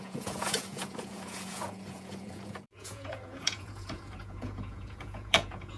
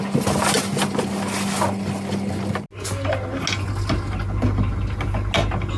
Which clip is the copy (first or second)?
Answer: first